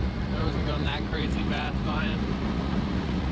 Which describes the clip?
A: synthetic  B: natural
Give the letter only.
A